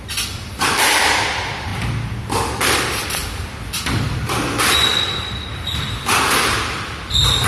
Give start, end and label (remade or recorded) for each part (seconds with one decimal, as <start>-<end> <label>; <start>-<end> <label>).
0.0-1.7 remade; 1.7-2.5 recorded; 2.5-3.2 remade; 3.2-4.0 recorded; 4.0-7.5 remade